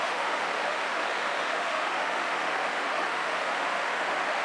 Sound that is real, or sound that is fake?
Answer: fake